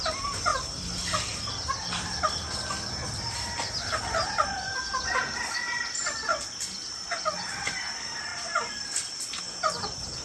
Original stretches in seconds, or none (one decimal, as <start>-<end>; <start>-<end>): 0.5-3.2; 4.7-7.4